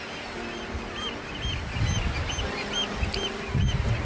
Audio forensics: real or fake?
real